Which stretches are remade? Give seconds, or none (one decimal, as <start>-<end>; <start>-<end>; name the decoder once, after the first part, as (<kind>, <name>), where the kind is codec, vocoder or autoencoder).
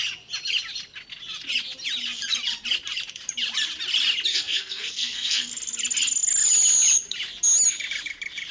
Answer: 4.3-5.5 (codec, SNAC)